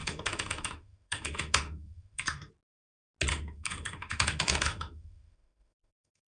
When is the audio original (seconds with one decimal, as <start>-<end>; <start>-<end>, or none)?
2.5-3.3